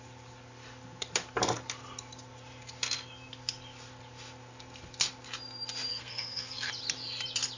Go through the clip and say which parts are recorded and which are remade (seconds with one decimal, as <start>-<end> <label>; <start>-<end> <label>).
0.0-5.9 recorded; 5.9-6.7 remade; 6.7-7.6 recorded